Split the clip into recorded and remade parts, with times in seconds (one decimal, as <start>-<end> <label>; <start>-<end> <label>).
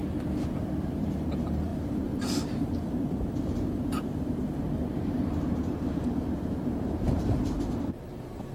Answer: 0.0-1.0 recorded; 1.0-8.5 remade